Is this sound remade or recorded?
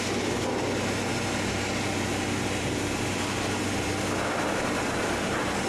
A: recorded